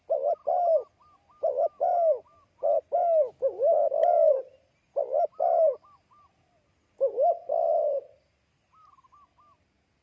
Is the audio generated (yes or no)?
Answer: no